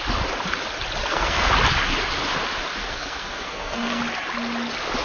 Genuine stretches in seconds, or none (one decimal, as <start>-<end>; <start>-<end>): 0.0-1.0; 1.5-2.8; 4.0-5.0